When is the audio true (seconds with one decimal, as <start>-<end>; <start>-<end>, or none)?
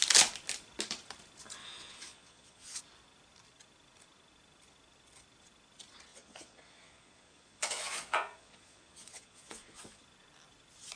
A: 0.0-1.6; 2.8-6.1; 10.0-11.0